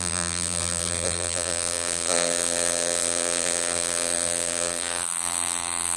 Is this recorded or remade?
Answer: remade